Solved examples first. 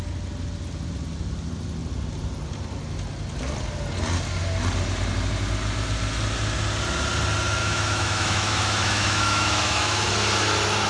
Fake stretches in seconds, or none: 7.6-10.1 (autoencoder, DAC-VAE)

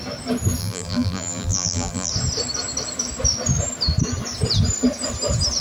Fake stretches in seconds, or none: 0.6-2.1 (vocoder, BigVGAN v2)